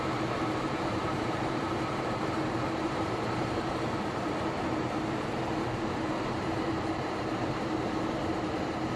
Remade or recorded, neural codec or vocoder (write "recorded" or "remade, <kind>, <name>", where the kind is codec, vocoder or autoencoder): remade, vocoder, BigVGAN v2